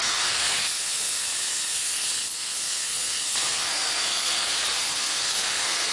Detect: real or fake fake